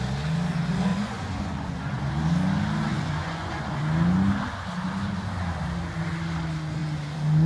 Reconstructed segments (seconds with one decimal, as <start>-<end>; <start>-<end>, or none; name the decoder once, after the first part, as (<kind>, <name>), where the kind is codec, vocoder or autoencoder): 0.9-2.1 (vocoder, Vocos); 2.9-3.8